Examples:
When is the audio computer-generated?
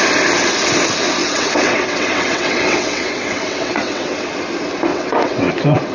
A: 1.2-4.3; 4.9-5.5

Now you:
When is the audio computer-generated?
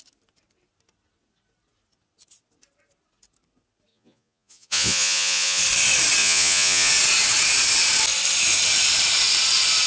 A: 3.9-5.6; 6.2-6.9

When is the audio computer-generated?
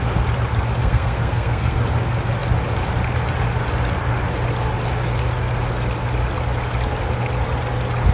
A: 0.8-1.8